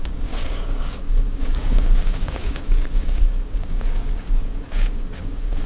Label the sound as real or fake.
fake